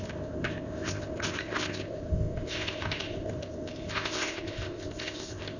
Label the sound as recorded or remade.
remade